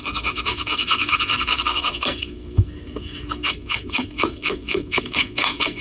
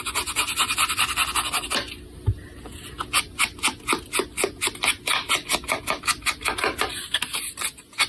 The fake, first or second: first